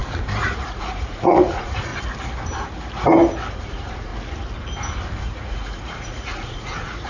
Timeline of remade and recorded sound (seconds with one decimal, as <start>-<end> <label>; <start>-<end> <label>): 0.0-0.5 recorded; 0.5-1.9 remade; 1.9-3.5 recorded; 3.5-4.1 remade; 4.1-5.2 recorded; 5.2-7.1 remade